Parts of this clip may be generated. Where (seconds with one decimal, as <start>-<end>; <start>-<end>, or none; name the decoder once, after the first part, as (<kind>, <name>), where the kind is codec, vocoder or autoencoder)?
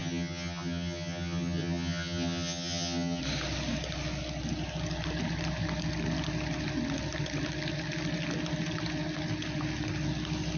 0.0-3.2 (vocoder, HiFi-GAN)